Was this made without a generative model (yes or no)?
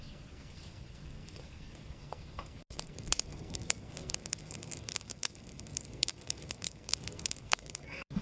no